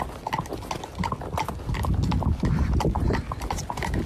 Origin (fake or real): real